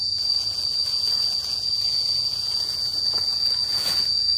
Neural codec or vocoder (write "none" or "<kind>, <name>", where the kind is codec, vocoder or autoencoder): vocoder, Vocos